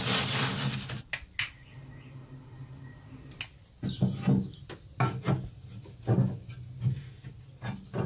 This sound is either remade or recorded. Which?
recorded